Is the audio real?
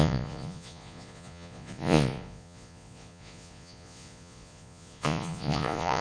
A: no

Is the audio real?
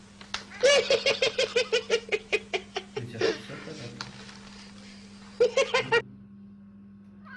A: yes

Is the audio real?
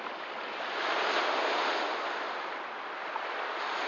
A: no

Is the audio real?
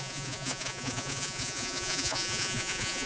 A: no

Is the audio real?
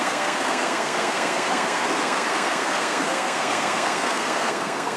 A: no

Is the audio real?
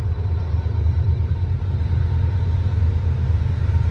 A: yes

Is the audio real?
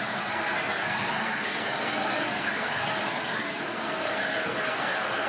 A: no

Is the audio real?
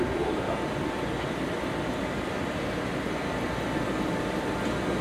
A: no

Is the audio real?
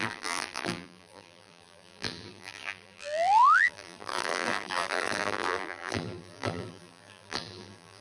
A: no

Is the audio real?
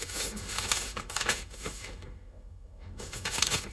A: no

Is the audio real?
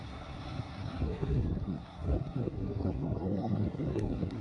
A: no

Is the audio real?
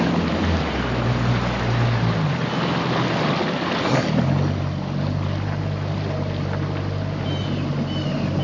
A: yes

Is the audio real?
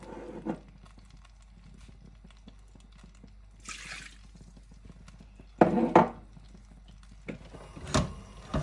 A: yes